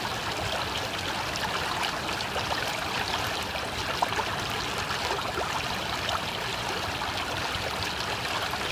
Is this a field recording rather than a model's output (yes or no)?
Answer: yes